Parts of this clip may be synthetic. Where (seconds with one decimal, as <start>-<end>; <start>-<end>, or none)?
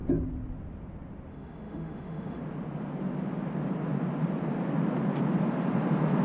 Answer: 1.3-2.4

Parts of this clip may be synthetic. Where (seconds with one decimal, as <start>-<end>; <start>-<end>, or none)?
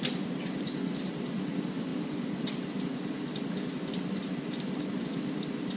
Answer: none